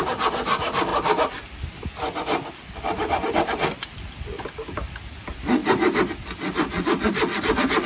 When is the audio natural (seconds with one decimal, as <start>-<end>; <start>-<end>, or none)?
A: 0.9-2.5